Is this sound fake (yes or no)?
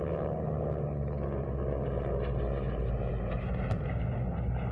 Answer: no